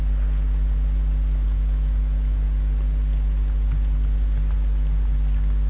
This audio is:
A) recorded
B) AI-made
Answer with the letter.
A